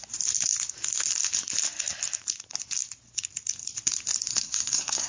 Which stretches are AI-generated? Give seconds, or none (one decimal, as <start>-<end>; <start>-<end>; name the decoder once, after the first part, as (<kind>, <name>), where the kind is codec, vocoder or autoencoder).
4.3-5.1 (codec, SNAC)